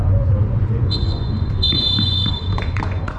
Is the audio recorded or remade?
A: remade